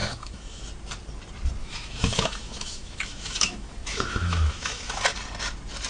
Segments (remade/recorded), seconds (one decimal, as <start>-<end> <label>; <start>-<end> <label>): 0.0-0.6 remade; 0.6-1.6 recorded; 1.6-5.0 remade; 5.0-5.9 recorded